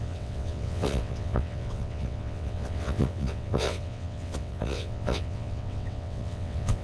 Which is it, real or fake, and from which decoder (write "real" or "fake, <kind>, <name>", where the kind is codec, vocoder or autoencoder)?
fake, vocoder, WaveNeXt